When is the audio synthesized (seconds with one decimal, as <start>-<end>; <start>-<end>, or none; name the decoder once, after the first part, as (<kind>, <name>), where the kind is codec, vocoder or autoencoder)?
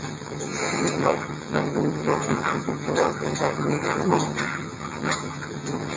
0.0-6.0 (vocoder, HiFi-GAN)